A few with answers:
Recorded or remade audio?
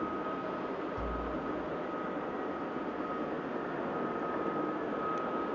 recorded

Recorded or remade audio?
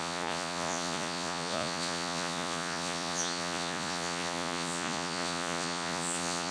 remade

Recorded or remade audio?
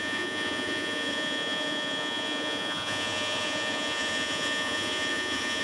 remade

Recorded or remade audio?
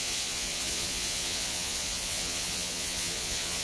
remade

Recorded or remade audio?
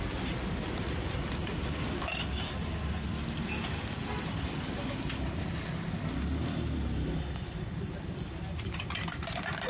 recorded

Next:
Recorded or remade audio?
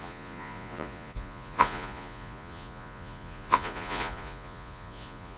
remade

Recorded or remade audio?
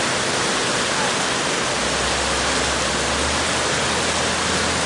recorded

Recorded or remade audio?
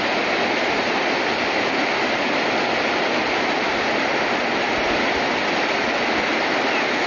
recorded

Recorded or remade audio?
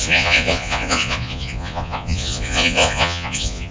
remade